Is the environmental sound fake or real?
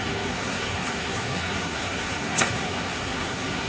fake